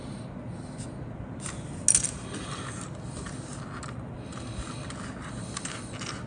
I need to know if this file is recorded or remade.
recorded